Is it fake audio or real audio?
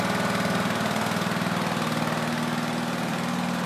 real